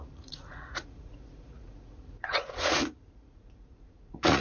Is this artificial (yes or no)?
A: yes